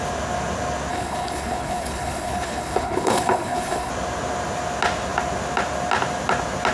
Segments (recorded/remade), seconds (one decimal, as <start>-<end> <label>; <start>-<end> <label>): 0.0-0.9 recorded; 0.9-3.9 remade; 3.9-6.7 recorded